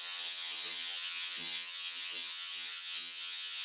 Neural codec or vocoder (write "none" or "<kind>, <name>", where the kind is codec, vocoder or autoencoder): vocoder, HiFi-GAN